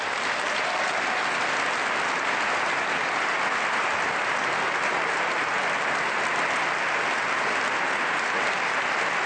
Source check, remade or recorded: recorded